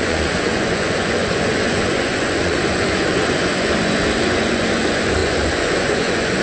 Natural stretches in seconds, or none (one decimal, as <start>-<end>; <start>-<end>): none